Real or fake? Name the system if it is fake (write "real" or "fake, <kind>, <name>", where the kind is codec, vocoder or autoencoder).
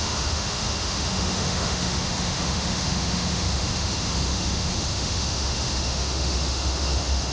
fake, autoencoder, DAC-VAE